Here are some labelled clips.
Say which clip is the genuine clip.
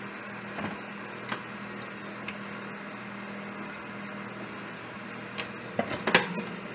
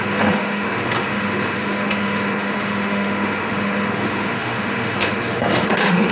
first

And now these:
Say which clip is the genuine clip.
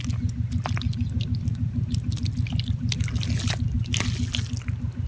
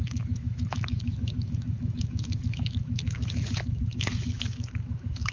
first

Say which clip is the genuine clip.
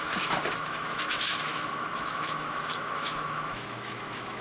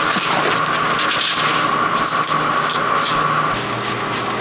second